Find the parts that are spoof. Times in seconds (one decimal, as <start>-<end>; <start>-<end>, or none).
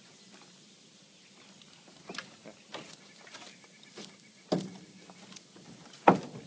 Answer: none